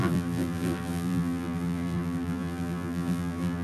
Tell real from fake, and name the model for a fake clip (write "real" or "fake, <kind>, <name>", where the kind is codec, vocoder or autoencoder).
fake, vocoder, BigVGAN v2